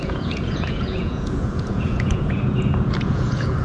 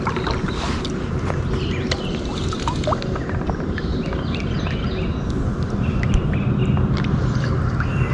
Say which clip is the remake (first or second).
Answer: first